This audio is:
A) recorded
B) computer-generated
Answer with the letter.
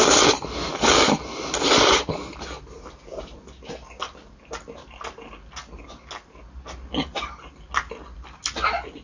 A